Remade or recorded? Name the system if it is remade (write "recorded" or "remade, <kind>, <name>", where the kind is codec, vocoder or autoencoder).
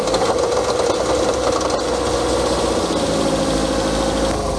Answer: recorded